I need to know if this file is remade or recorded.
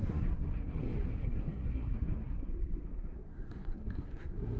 remade